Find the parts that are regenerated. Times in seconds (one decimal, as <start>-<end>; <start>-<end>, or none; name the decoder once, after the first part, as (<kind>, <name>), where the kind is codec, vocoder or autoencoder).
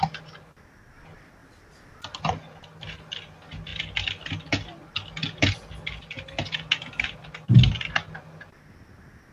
1.4-2.2 (vocoder, BigVGAN v2)